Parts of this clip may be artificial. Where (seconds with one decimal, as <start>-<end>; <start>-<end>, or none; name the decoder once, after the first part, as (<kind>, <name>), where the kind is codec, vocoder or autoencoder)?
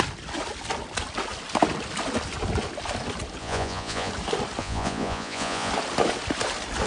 3.4-4.1 (vocoder, Vocos); 4.6-5.7